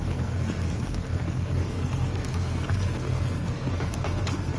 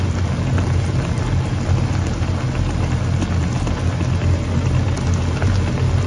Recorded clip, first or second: second